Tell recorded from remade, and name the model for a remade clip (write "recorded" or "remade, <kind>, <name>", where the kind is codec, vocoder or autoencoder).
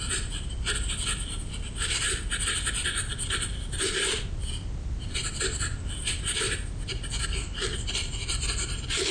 recorded